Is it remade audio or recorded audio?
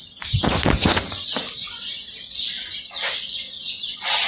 recorded